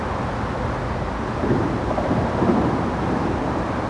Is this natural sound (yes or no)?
yes